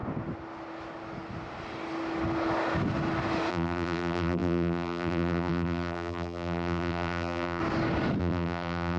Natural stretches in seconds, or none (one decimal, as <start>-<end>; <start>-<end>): 0.0-3.5; 7.6-8.2

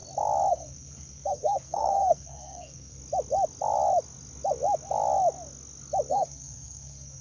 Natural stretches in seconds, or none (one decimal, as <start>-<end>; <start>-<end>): 0.0-0.5; 3.0-6.1

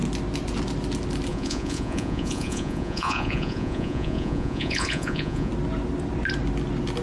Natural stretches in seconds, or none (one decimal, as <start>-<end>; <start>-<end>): 0.0-1.3; 5.5-7.0

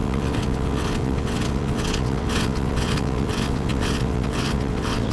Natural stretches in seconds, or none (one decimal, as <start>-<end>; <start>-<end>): none

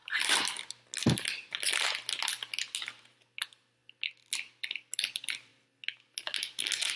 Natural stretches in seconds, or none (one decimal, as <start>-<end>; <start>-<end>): 0.0-7.0

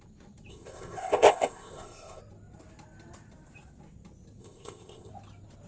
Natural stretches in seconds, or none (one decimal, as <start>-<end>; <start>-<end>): 0.0-0.5; 2.2-4.4; 5.1-5.7

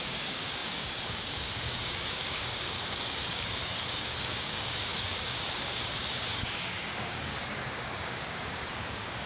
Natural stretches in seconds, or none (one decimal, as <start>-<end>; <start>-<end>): none